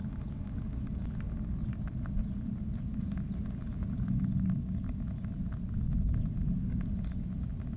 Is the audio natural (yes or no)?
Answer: yes